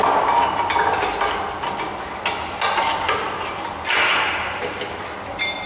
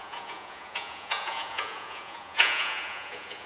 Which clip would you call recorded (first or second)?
first